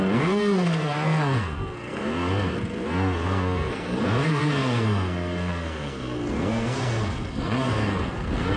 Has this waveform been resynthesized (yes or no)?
yes